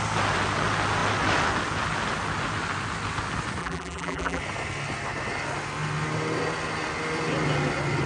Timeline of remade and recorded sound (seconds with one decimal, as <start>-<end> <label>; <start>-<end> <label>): 0.0-3.6 recorded; 3.6-4.4 remade; 4.4-8.1 recorded